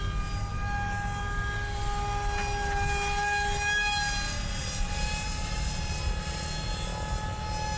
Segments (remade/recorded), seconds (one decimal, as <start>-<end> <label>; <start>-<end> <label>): 0.0-7.8 recorded